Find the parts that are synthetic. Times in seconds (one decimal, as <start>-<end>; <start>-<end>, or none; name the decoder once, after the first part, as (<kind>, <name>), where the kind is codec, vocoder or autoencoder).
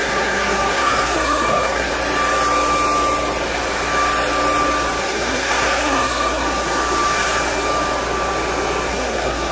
0.0-1.9 (codec, SNAC); 5.0-6.8; 8.9-9.5